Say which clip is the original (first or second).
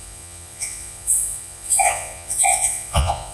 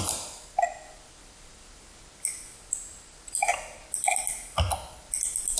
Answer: second